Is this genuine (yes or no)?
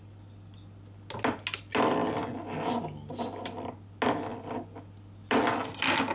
yes